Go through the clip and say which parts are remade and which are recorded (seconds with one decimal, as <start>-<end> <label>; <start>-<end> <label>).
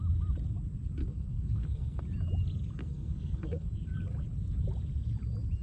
0.0-1.0 recorded; 1.0-2.0 remade; 2.0-2.8 recorded; 2.8-3.7 remade; 3.7-5.6 recorded